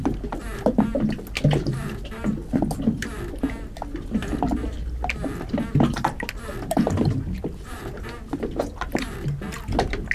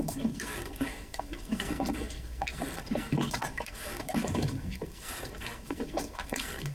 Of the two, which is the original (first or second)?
first